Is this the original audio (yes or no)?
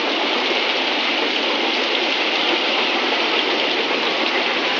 yes